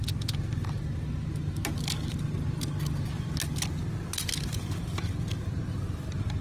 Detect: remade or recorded recorded